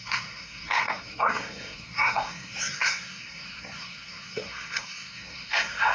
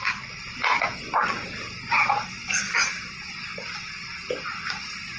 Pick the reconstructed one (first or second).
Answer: first